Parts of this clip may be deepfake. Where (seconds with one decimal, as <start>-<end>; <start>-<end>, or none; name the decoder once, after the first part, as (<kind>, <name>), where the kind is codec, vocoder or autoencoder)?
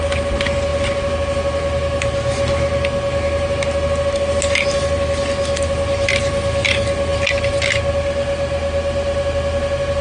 none